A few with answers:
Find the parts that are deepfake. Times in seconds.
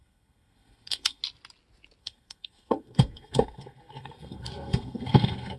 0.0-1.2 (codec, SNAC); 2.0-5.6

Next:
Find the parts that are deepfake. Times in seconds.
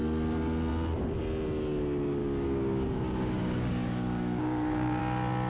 2.2-5.0 (codec, DAC)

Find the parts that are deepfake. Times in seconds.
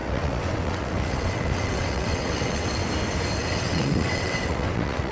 0.0-2.8 (vocoder, WaveNeXt); 3.4-5.1